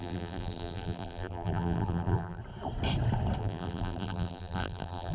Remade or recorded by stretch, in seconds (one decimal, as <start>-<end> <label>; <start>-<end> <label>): 0.0-2.4 remade; 2.4-3.4 recorded; 3.4-5.1 remade